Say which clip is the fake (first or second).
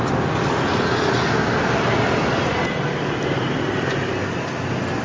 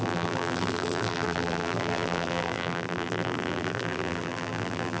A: second